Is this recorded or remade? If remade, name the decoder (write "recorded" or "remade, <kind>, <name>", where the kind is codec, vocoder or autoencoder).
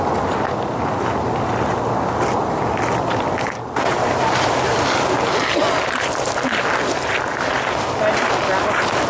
recorded